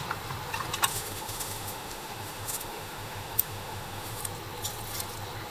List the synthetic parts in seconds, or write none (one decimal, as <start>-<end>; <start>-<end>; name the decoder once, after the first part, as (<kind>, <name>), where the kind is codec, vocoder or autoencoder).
0.9-4.2 (autoencoder, DAC-VAE)